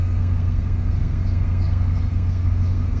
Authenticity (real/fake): fake